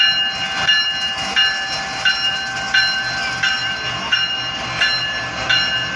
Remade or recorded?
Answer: recorded